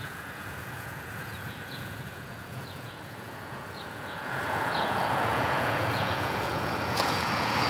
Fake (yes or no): yes